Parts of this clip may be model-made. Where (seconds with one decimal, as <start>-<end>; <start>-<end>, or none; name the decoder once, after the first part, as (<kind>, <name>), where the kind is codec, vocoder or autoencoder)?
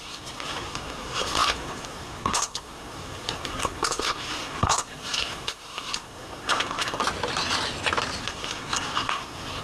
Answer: 0.0-7.0 (codec, SNAC); 8.2-9.6